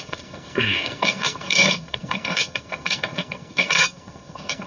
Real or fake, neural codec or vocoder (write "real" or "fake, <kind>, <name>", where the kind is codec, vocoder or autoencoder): fake, codec, SNAC